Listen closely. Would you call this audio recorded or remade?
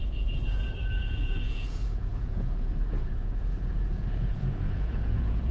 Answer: remade